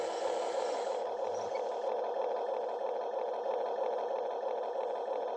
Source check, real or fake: real